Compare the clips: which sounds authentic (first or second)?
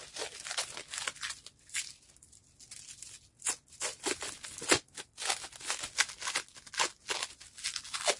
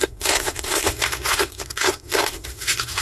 first